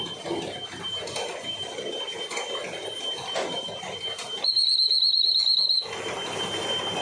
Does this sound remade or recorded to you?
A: recorded